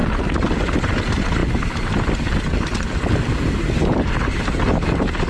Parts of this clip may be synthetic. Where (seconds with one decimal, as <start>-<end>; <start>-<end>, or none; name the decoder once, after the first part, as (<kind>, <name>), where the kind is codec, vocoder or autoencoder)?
none